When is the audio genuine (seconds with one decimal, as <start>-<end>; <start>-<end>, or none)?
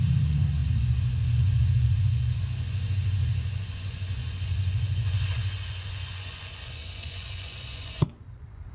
none